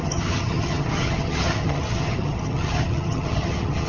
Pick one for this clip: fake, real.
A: fake